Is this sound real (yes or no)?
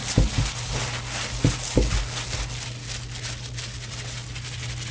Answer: yes